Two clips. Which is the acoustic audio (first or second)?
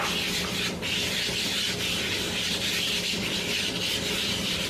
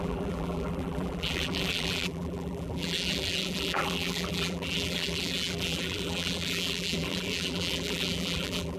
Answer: first